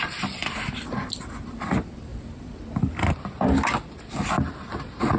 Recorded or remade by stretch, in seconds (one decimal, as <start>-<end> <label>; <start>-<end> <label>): 0.0-5.2 recorded